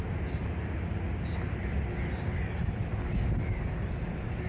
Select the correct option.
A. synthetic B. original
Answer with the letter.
B